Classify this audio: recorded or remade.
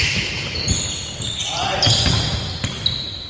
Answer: recorded